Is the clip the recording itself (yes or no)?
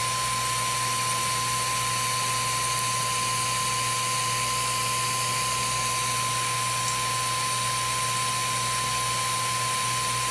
yes